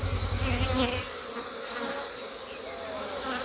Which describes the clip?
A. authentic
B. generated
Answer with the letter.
A